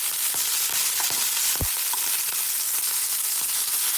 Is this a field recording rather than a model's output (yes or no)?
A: yes